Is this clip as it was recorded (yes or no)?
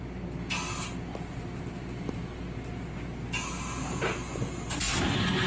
yes